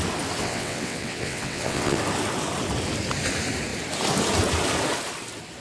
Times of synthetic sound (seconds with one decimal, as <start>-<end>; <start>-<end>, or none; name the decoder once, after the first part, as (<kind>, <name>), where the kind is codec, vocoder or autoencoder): 0.4-2.0 (vocoder, WaveNeXt)